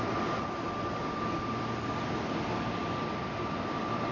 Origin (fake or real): real